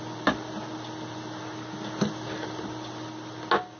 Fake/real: real